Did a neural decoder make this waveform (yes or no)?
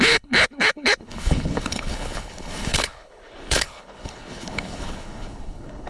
yes